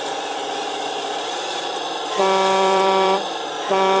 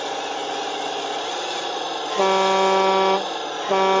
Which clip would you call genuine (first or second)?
second